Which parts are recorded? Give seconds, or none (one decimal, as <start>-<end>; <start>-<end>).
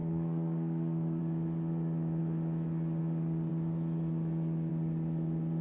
1.2-5.6